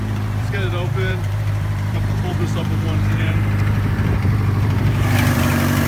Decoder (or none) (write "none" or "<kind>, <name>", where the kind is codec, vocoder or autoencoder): vocoder, BigVGAN v2